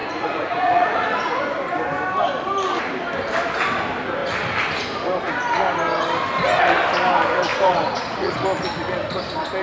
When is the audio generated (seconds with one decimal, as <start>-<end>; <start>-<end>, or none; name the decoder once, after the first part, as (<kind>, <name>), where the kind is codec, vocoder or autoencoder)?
0.0-1.4 (vocoder, Vocos); 7.5-8.3